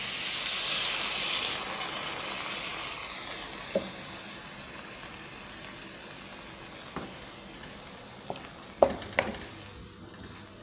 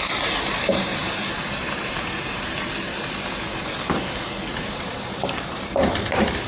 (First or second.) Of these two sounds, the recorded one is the first